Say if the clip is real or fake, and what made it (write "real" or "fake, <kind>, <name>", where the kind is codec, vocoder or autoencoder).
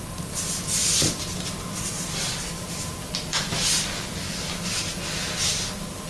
real